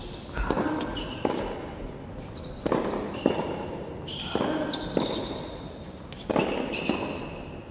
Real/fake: real